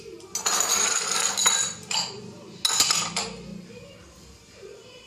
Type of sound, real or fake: real